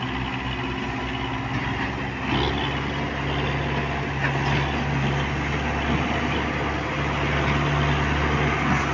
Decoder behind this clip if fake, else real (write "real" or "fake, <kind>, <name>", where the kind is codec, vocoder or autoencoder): real